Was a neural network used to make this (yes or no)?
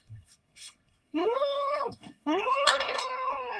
yes